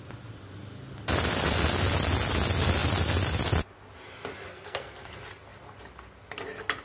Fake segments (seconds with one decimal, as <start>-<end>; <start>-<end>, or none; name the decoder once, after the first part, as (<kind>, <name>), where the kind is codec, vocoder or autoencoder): 4.5-5.1 (codec, SNAC)